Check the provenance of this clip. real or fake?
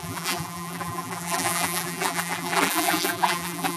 fake